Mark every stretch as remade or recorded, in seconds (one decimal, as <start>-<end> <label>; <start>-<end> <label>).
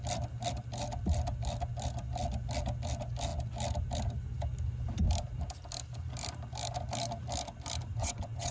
0.0-8.0 recorded; 8.0-8.5 remade